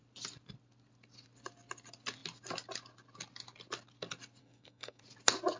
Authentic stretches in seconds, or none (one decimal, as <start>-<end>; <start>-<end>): 0.0-4.4; 5.0-5.6